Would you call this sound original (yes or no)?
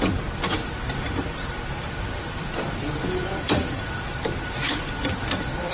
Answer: no